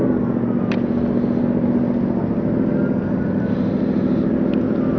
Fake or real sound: real